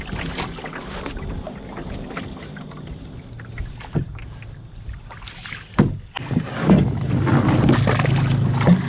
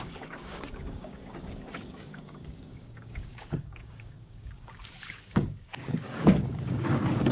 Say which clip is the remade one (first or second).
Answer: second